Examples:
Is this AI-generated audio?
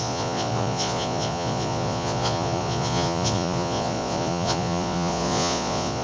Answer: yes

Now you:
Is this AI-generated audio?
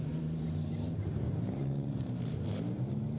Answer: yes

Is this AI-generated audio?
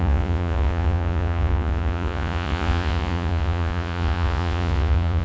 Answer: yes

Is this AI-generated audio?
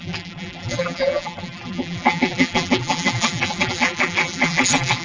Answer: yes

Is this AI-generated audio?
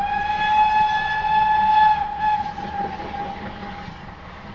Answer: no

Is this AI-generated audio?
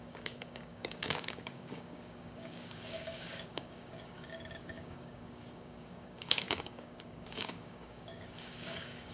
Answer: yes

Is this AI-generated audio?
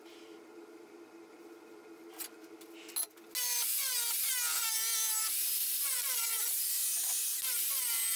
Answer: no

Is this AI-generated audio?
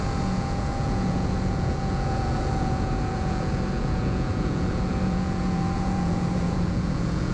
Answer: yes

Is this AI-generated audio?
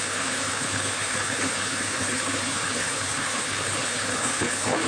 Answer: yes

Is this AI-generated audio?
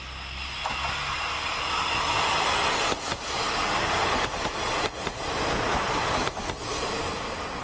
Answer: no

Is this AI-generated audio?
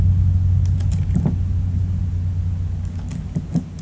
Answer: no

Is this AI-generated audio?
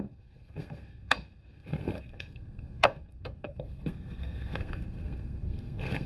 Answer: yes